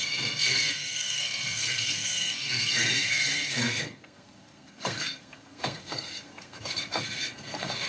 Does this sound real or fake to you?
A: fake